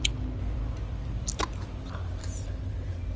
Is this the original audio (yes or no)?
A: yes